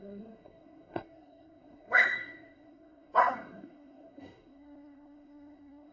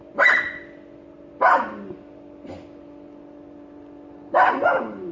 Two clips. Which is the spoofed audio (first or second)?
first